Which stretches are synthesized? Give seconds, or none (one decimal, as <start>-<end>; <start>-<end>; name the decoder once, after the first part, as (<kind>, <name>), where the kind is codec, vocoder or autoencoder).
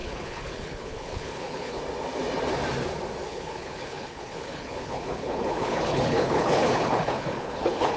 0.0-1.8 (codec, HILCodec); 3.3-8.0